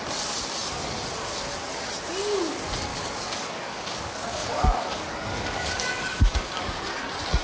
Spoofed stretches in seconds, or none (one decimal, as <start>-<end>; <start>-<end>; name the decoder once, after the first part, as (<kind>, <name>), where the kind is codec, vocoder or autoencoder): 2.9-6.8 (codec, DAC)